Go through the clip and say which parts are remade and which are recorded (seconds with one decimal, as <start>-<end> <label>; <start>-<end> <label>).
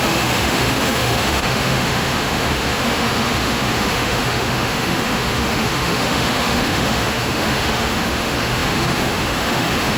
0.0-10.0 remade